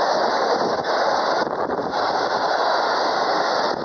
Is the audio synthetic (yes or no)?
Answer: no